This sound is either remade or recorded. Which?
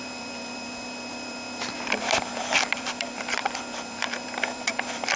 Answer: remade